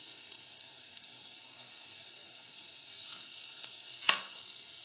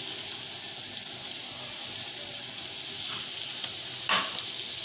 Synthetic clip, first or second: first